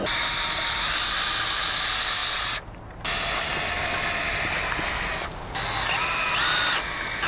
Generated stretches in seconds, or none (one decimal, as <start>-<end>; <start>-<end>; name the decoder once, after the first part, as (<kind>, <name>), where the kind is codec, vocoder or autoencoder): none

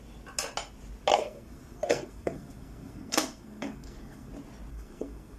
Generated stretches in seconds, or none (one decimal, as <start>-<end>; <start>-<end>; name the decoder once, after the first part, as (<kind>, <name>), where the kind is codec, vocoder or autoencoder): 1.1-4.3 (codec, SNAC); 4.7-5.4

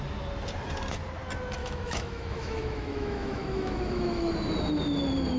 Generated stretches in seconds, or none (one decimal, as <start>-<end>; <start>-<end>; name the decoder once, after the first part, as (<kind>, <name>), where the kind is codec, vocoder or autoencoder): 1.6-4.3 (autoencoder, DAC-VAE)

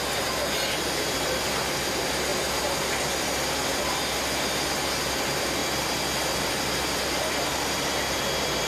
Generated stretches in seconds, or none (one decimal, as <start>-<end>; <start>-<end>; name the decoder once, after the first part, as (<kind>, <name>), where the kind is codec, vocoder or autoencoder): none

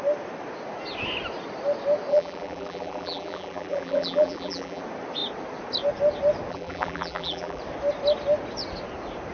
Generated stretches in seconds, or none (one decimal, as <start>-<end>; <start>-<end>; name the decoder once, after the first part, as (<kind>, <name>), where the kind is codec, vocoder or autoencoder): 2.1-4.8 (vocoder, BigVGAN v2); 6.5-7.6

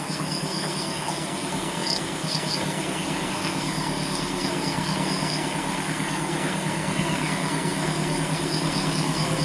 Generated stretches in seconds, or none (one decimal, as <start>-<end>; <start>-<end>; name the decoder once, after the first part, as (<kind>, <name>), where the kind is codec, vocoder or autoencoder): 0.0-9.4 (codec, SNAC)

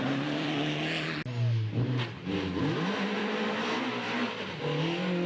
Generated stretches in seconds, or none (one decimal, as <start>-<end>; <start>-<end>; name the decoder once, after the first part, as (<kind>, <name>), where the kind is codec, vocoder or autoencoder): 3.2-4.3 (vocoder, BigVGAN v2)

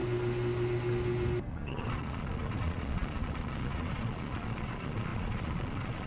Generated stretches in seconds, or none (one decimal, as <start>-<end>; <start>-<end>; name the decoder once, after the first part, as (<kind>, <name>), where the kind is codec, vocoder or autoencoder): 1.5-6.1 (vocoder, Vocos)